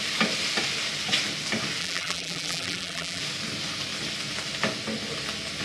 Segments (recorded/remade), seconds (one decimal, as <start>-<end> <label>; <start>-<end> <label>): 0.0-1.8 recorded; 1.8-3.2 remade; 3.2-5.6 recorded